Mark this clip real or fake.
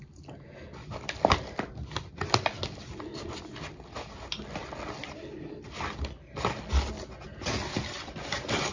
real